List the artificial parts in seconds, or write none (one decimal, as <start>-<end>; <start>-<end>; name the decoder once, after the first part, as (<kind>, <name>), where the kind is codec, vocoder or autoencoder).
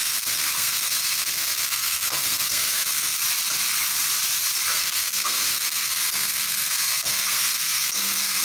0.0-3.2 (codec, SNAC); 4.7-8.4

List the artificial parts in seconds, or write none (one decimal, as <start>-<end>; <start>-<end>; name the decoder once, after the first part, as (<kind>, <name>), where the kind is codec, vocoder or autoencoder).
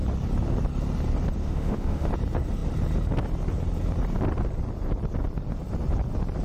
1.4-2.1 (autoencoder, DAC-VAE)